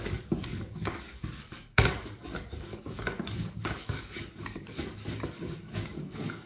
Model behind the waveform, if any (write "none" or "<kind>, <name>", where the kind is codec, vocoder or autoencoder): codec, DAC